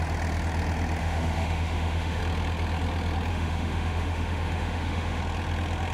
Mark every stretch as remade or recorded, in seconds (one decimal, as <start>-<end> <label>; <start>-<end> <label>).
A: 0.0-1.0 recorded; 1.0-2.2 remade; 2.2-3.3 recorded; 3.3-5.2 remade; 5.2-5.9 recorded